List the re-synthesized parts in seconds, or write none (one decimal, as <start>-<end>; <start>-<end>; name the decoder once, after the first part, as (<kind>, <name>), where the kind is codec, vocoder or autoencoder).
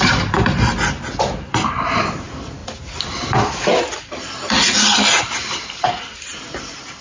none